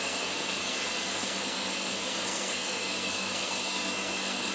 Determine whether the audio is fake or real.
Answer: fake